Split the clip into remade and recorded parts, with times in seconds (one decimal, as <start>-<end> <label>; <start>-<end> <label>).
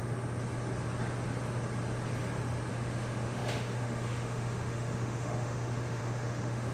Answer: 0.0-2.7 recorded; 2.7-6.7 remade